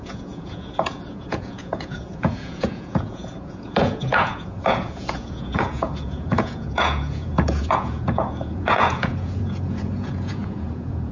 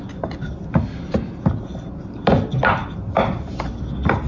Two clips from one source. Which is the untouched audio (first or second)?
second